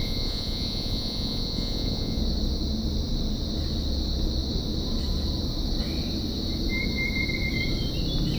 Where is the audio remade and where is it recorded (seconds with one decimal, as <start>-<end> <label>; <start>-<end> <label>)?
0.0-2.2 remade; 2.2-8.4 recorded